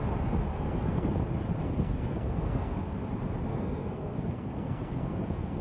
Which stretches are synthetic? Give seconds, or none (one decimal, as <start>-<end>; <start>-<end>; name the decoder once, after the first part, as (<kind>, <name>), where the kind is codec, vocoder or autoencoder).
0.5-1.1 (codec, SNAC); 1.6-2.7; 3.5-5.6